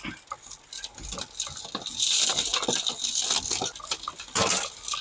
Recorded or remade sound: recorded